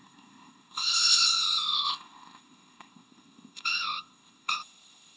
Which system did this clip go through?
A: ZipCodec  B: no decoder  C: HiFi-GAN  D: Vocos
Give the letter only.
A